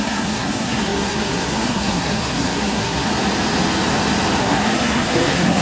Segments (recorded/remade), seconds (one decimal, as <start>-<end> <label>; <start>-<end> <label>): 0.0-3.1 remade; 3.1-4.4 recorded; 4.4-5.6 remade